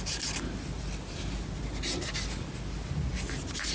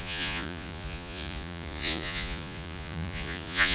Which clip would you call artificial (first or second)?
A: second